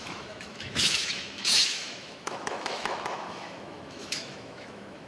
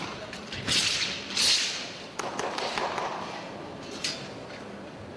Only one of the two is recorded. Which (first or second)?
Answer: second